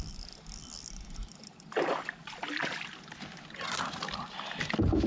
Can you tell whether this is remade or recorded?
recorded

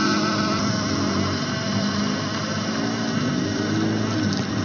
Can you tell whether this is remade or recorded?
recorded